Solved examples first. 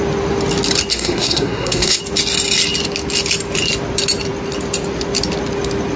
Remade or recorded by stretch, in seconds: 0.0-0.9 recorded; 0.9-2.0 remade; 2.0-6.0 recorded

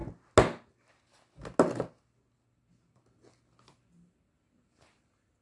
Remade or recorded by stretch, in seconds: 0.0-5.4 recorded